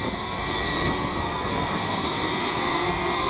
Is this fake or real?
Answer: fake